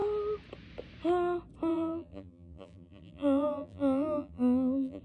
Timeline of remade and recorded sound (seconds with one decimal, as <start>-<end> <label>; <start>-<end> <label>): 0.0-1.7 recorded; 1.7-5.0 remade